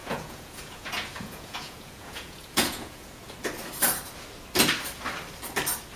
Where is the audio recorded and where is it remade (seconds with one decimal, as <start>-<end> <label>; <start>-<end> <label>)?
0.0-3.2 remade; 3.2-6.0 recorded